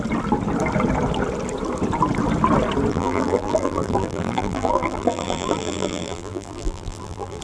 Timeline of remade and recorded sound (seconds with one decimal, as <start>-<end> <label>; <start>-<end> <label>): 0.0-2.9 recorded; 2.9-7.4 remade